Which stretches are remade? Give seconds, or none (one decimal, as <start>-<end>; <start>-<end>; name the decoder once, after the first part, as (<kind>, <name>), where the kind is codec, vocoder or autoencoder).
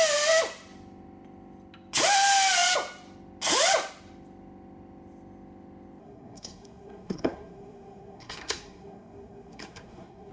6.0-10.3 (codec, SNAC)